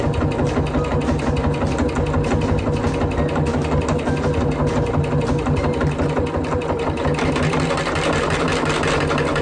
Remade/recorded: recorded